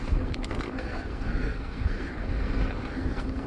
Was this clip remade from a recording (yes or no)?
yes